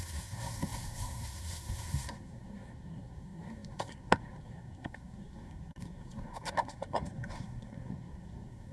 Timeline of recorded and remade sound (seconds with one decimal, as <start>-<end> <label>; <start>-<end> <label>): 0.0-8.7 remade